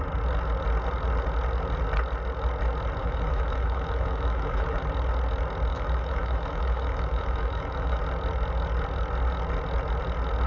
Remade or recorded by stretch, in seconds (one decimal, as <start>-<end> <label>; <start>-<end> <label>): 0.0-3.0 recorded; 3.0-4.8 remade; 4.8-5.7 recorded; 5.7-8.0 remade; 8.0-10.5 recorded